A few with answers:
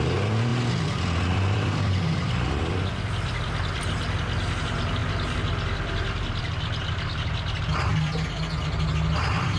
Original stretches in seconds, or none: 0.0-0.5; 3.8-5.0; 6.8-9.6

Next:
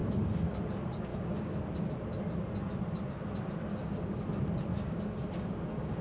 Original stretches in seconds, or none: 0.6-1.1; 1.6-3.7; 4.2-4.7